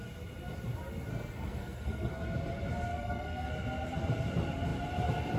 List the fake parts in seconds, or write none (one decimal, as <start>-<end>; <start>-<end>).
1.1-2.1; 2.9-3.5